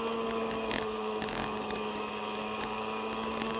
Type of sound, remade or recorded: remade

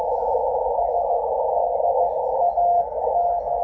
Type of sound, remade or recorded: recorded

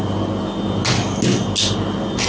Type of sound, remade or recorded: recorded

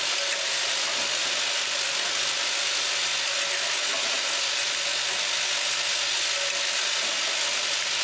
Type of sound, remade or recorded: recorded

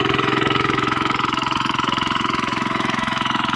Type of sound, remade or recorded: remade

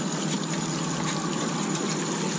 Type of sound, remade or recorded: recorded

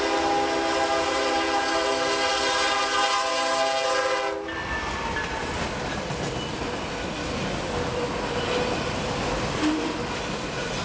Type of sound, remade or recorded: recorded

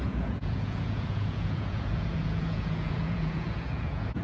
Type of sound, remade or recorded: remade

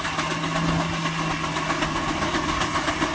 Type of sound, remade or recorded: recorded